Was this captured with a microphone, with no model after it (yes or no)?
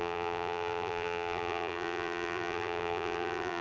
no